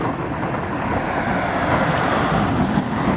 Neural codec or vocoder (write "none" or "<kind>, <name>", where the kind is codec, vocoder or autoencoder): none